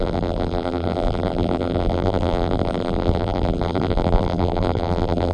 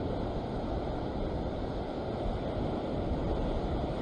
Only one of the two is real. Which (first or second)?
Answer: second